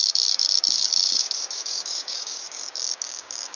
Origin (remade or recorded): remade